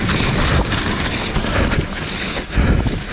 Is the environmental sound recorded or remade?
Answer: recorded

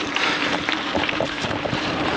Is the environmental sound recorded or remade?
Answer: remade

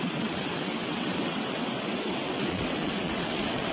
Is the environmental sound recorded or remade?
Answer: remade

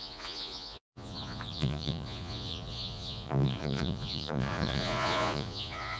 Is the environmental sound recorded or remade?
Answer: remade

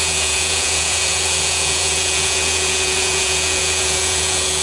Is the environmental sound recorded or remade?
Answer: remade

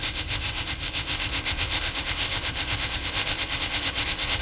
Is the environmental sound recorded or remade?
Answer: remade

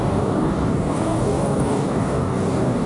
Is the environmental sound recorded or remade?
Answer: remade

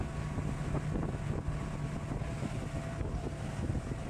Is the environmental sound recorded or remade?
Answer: recorded